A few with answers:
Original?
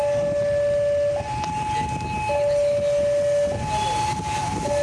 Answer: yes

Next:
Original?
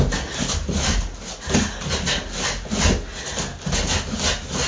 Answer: yes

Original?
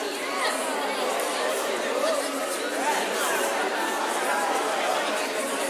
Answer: yes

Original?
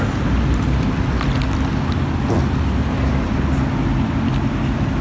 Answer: yes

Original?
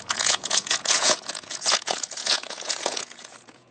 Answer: no